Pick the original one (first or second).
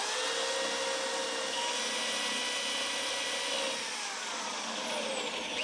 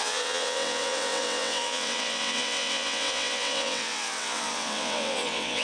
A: first